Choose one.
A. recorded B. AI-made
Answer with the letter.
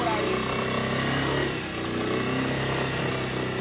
A